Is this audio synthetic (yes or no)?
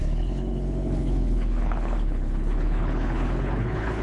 yes